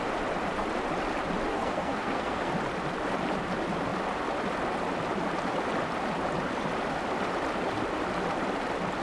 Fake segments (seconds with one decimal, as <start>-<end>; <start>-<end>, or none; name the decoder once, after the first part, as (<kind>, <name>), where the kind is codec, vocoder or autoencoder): 1.5-2.5 (codec, SNAC)